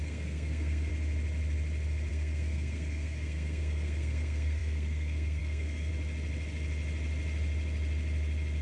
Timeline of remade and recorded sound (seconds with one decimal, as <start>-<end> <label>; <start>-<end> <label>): 0.0-0.9 remade; 0.9-2.1 recorded; 2.1-5.9 remade; 5.9-8.6 recorded